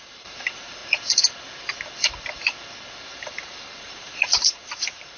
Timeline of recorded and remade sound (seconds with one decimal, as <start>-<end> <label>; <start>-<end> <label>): 0.0-0.8 remade; 0.8-3.9 recorded; 3.9-5.2 remade